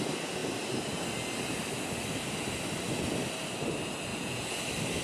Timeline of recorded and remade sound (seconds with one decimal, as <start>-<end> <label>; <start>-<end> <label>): 0.0-4.1 recorded; 4.1-4.6 remade; 4.6-5.0 recorded